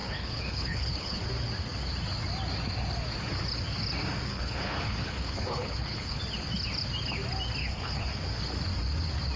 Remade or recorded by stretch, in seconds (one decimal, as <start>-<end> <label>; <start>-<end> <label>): 0.0-1.2 remade; 1.2-4.3 recorded; 4.3-6.2 remade; 6.2-7.6 recorded; 7.6-8.1 remade; 8.1-9.4 recorded